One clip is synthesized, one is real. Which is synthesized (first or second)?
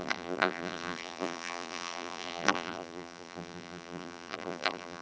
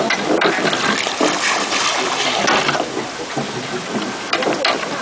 first